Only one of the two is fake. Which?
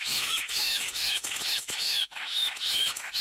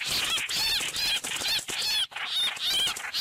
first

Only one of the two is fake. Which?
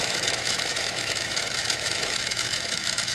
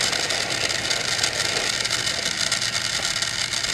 first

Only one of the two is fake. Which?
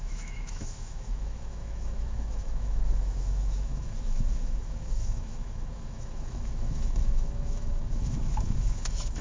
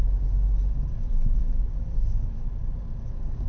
first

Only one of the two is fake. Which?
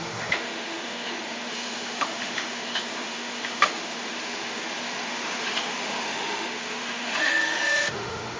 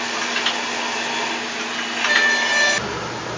first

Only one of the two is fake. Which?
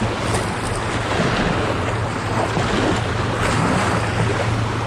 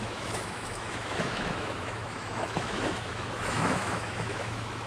second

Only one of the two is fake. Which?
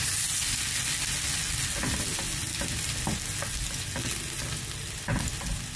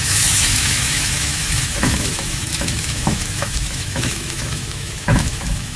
second